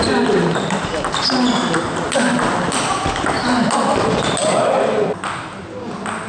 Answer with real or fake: real